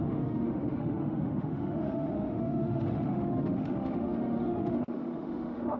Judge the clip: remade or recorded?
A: remade